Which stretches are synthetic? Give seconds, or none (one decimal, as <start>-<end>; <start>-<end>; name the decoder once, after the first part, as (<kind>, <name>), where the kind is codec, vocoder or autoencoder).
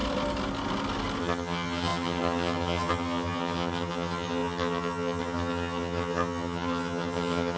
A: 1.2-7.6 (vocoder, HiFi-GAN)